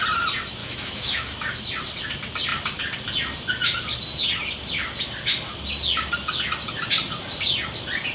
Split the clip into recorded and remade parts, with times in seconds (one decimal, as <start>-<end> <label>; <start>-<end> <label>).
0.0-0.6 recorded; 0.6-1.6 remade; 1.6-8.1 recorded

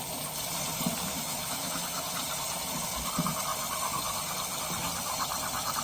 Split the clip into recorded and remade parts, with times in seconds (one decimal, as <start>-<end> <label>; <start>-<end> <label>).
0.0-1.1 recorded; 1.1-2.0 remade; 2.0-5.8 recorded